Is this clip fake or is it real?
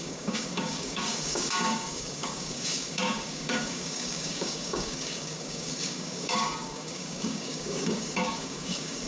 fake